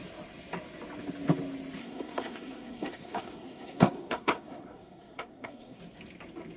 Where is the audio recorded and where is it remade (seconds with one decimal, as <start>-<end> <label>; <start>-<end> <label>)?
0.0-1.8 recorded; 1.8-5.8 remade; 5.8-6.6 recorded